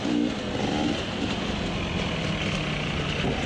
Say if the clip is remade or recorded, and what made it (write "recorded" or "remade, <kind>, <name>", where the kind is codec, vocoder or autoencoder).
recorded